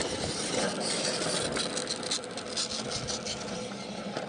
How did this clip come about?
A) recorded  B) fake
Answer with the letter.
A